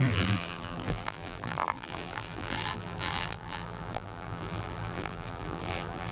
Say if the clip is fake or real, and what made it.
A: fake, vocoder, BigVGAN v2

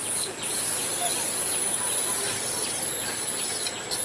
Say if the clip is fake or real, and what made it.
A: real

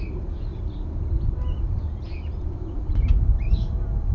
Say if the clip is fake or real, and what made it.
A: real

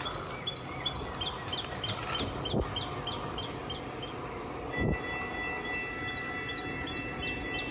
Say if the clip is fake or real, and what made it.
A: real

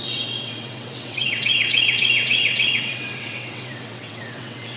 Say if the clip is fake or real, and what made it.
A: fake, vocoder, WaveNeXt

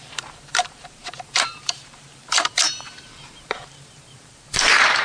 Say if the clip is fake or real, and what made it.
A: fake, vocoder, BigVGAN v2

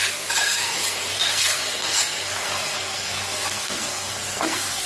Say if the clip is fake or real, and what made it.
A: fake, codec, SNAC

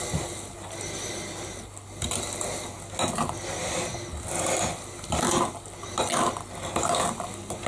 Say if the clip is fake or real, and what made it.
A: real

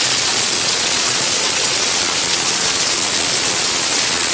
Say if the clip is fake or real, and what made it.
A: fake, vocoder, Vocos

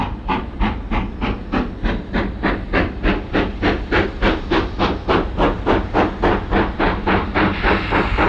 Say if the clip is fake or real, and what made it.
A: real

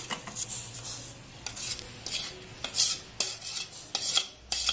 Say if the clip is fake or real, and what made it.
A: real